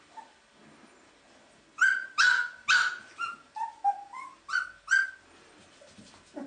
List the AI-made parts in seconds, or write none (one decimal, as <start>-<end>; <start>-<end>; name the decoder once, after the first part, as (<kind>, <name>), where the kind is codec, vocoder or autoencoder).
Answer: none